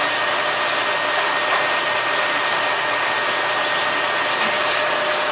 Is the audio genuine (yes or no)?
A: yes